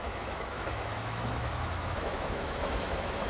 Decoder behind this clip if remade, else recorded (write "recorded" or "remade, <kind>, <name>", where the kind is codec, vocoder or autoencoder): remade, autoencoder, DAC-VAE